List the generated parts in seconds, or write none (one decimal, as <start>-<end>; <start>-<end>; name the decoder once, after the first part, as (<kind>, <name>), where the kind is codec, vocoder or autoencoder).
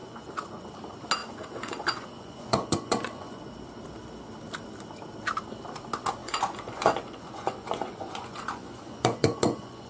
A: 0.0-0.7 (vocoder, Vocos); 1.2-3.4; 6.2-9.9